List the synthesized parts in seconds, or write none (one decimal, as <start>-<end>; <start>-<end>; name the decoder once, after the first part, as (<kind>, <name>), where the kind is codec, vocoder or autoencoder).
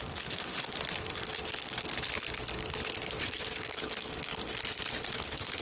0.0-0.5 (autoencoder, DAC-VAE); 3.2-4.3; 5.1-5.6